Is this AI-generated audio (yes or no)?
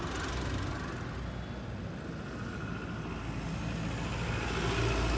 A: no